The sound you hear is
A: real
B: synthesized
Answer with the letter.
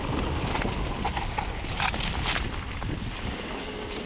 A